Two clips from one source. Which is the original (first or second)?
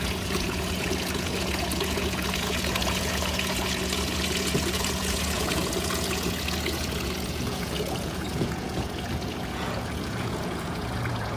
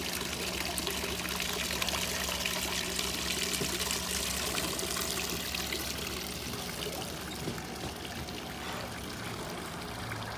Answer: second